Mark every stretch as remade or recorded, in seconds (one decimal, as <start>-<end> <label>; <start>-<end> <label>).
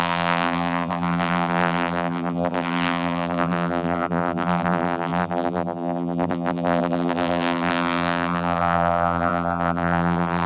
0.0-10.5 remade